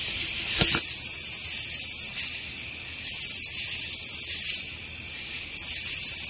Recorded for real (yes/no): no